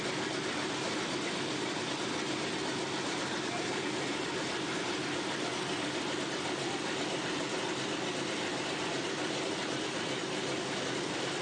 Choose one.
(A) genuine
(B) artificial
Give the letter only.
A